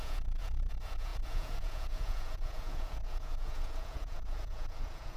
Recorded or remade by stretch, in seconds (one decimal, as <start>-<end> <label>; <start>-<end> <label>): 0.0-5.2 remade